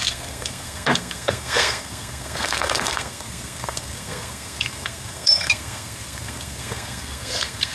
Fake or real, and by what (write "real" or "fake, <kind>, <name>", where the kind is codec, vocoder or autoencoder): fake, codec, SNAC